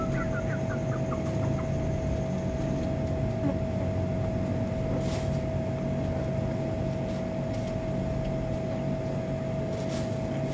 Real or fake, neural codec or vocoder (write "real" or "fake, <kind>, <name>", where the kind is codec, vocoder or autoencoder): real